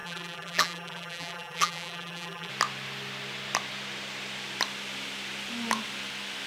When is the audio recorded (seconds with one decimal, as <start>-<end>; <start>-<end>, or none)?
2.5-6.5